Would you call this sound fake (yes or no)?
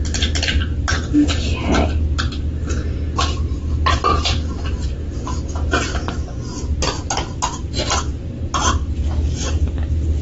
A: no